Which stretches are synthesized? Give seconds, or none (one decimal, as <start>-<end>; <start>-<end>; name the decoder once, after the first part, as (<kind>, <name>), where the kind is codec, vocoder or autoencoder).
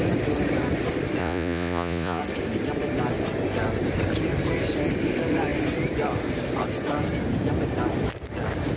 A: 1.2-2.2 (vocoder, Vocos)